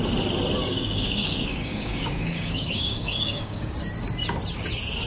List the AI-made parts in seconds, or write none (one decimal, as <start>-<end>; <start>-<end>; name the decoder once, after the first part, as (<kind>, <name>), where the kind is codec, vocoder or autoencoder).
0.6-3.7 (codec, DAC)